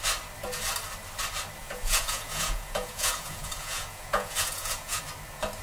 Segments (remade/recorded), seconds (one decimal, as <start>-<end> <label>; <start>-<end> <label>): 0.0-1.6 recorded; 1.6-5.0 remade; 5.0-5.6 recorded